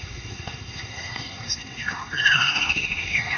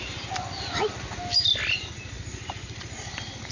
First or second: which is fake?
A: first